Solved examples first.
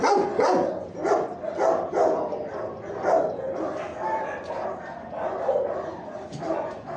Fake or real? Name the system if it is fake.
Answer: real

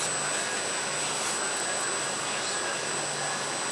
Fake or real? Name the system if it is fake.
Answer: real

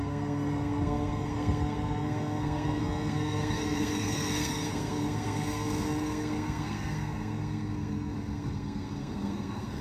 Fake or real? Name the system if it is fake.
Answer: fake, codec, SNAC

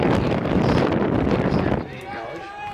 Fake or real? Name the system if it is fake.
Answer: fake, vocoder, BigVGAN v2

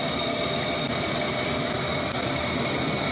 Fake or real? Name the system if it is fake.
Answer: real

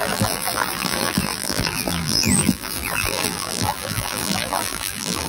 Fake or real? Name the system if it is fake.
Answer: fake, vocoder, BigVGAN v2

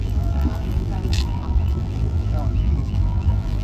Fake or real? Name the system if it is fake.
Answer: fake, vocoder, BigVGAN v2